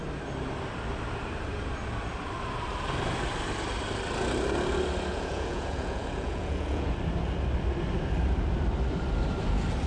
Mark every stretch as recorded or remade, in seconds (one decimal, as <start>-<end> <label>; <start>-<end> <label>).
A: 0.0-5.1 recorded; 5.1-7.0 remade; 7.0-9.9 recorded